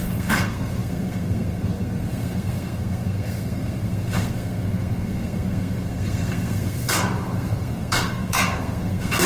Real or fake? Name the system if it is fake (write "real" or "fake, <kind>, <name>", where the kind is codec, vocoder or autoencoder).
fake, codec, SNAC